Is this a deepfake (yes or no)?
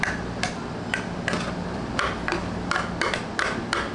no